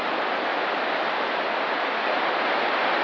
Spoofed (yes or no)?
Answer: no